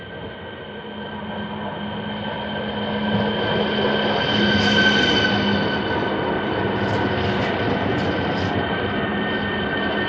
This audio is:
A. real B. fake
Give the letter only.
A